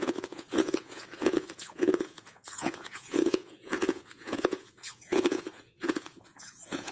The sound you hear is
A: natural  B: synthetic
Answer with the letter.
B